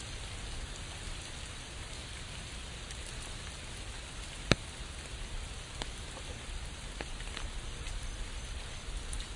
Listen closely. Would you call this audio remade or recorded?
recorded